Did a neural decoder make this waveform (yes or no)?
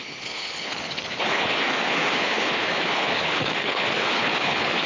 yes